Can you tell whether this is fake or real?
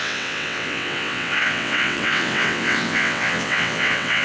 fake